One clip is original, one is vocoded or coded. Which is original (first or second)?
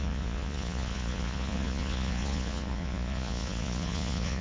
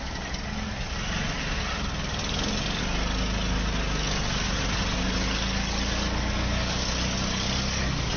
second